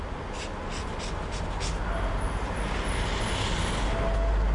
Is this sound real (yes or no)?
yes